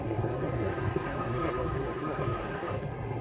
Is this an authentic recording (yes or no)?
no